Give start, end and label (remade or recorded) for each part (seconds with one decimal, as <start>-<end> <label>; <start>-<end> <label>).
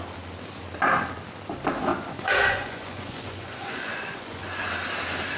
0.0-1.9 recorded; 1.9-4.7 remade; 4.7-5.4 recorded